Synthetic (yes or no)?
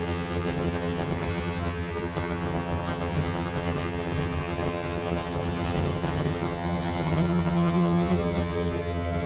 yes